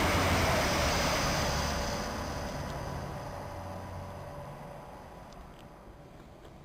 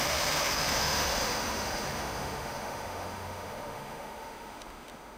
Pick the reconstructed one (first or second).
second